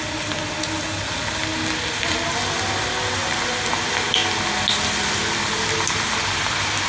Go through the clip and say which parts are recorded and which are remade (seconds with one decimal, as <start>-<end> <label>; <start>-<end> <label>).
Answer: 0.0-6.9 recorded